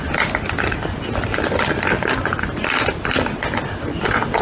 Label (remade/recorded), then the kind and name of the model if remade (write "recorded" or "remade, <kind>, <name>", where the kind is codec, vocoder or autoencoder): recorded